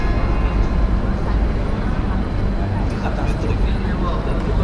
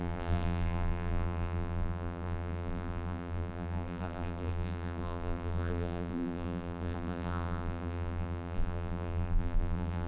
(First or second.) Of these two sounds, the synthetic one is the second